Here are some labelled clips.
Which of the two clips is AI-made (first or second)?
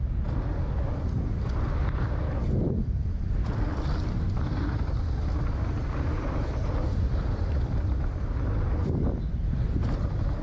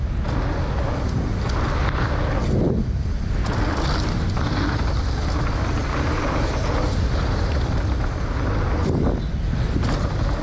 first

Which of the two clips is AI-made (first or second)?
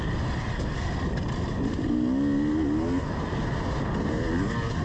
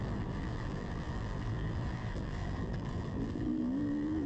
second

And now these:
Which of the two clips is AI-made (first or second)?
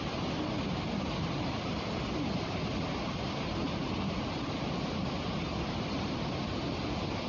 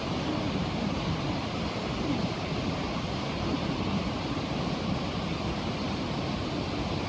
second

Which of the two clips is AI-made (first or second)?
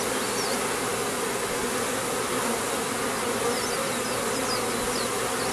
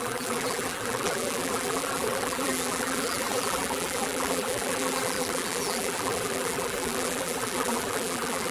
second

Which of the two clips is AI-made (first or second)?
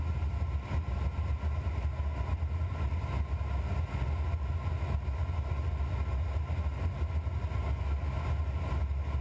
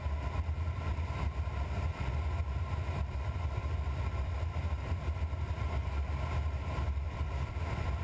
second